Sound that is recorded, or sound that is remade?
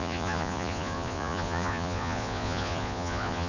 remade